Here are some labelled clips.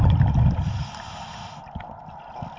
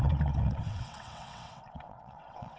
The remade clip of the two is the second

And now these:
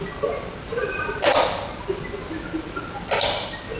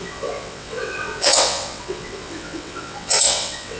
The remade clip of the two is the second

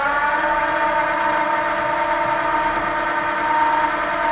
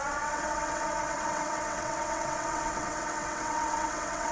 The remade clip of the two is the second